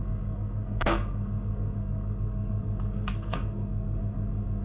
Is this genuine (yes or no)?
no